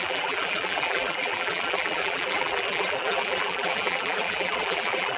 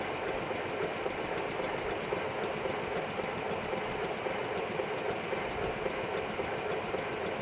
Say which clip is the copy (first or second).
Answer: first